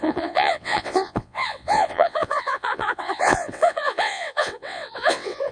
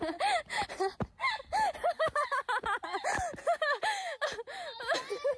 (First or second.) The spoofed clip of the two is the first